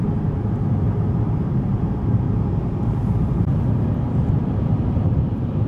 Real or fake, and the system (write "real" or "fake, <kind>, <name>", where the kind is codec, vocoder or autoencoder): fake, vocoder, BigVGAN v2